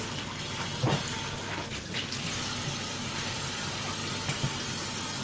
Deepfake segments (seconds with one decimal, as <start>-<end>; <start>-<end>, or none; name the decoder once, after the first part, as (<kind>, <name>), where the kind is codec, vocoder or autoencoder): 0.0-0.7 (vocoder, BigVGAN v2); 1.7-5.2